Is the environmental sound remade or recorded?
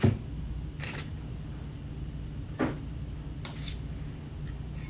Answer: recorded